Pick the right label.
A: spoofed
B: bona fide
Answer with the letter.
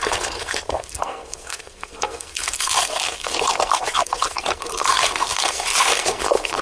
A